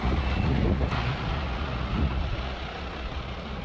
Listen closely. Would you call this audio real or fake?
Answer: fake